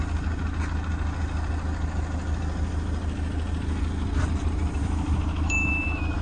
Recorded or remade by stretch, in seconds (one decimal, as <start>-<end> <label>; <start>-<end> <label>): 0.0-4.8 recorded; 4.8-6.2 remade